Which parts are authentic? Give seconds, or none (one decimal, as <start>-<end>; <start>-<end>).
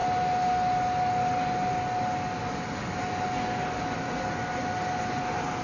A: 0.0-5.6